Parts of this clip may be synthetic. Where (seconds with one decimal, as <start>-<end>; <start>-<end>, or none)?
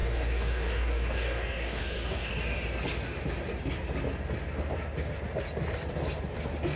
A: 0.0-2.3